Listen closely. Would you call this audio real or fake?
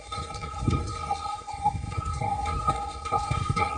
fake